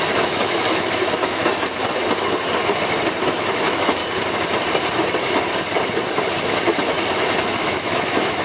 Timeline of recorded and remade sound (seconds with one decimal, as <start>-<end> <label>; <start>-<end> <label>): 0.0-1.4 remade; 1.4-3.2 recorded; 3.2-4.0 remade; 4.0-7.6 recorded; 7.6-8.4 remade